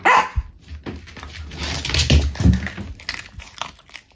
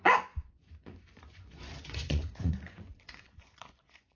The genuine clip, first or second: first